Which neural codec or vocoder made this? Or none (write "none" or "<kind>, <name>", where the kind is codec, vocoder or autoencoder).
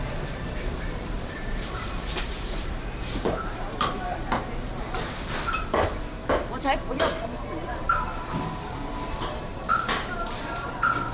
vocoder, BigVGAN v2